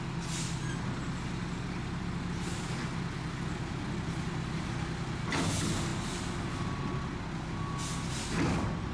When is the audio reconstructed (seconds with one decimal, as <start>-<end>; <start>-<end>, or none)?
none